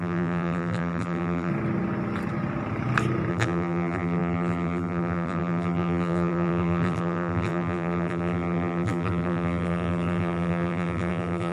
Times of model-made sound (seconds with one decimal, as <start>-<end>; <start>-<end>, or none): 0.0-1.5; 3.3-11.5